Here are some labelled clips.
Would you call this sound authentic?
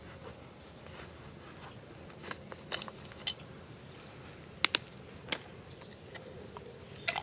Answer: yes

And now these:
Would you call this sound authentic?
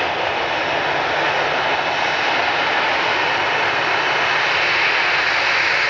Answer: yes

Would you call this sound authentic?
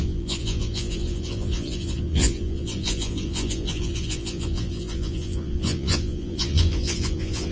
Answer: no